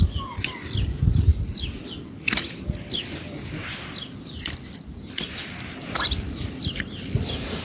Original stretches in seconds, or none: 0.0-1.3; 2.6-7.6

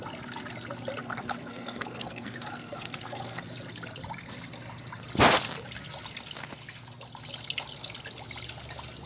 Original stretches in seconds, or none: 0.0-1.0; 3.4-9.1